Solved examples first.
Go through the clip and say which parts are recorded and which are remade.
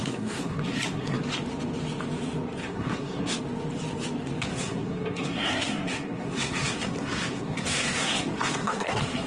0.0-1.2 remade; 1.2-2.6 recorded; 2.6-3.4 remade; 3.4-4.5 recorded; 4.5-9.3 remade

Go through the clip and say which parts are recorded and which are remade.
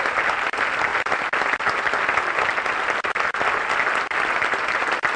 0.0-5.2 recorded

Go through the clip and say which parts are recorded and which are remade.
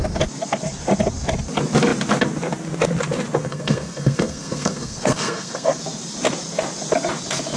0.0-3.4 recorded; 3.4-5.8 remade; 5.8-7.6 recorded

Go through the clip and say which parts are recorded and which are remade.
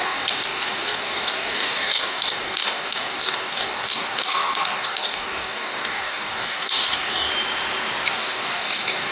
0.0-7.3 remade; 7.3-8.1 recorded; 8.1-9.1 remade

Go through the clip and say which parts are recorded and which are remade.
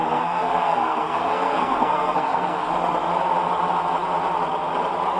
0.0-2.7 remade; 2.7-5.2 recorded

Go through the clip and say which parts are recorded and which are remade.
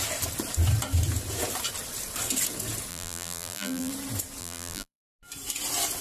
0.0-2.9 recorded; 2.9-3.9 remade; 3.9-4.4 recorded; 4.4-5.2 remade; 5.2-6.0 recorded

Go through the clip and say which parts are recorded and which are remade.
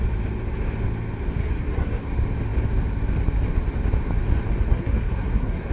0.0-1.4 recorded; 1.4-2.0 remade; 2.0-4.7 recorded; 4.7-5.7 remade